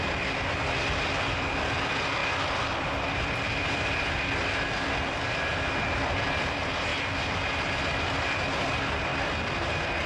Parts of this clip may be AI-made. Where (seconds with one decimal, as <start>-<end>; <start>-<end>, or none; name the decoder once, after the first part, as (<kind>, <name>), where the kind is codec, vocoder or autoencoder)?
0.0-2.2 (vocoder, BigVGAN v2); 2.8-9.1